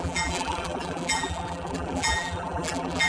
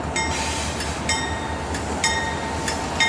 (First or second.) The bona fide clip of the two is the second